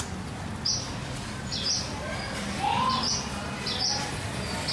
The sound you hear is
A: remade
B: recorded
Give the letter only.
B